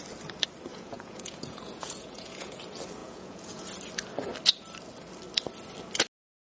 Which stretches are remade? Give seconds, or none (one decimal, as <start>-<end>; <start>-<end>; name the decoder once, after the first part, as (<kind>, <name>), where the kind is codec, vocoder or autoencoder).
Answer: 0.7-2.6 (vocoder, Vocos); 3.0-3.6